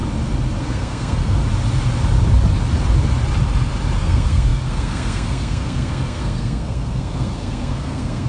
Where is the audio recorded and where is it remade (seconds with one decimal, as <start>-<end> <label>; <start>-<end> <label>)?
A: 0.0-0.6 recorded; 0.6-1.4 remade; 1.4-4.0 recorded; 4.0-8.3 remade